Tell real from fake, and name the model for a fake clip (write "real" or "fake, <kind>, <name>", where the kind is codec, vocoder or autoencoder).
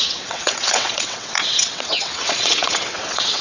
fake, vocoder, WaveNeXt